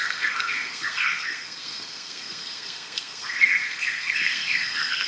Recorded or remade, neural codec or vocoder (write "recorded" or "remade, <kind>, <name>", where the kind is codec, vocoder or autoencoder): remade, codec, SNAC